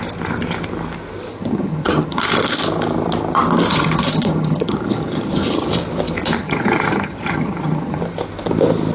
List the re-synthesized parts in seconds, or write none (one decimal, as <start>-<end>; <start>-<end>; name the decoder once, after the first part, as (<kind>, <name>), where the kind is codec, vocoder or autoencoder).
1.3-2.2 (vocoder, HiFi-GAN); 3.7-5.7; 6.4-8.0